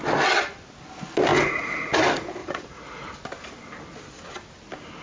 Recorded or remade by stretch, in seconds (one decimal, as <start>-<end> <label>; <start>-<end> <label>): 0.0-1.3 recorded; 1.3-2.0 remade; 2.0-2.4 recorded; 2.4-3.1 remade; 3.1-5.0 recorded